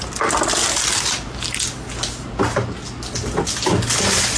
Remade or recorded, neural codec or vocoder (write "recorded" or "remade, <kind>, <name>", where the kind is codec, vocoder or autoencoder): recorded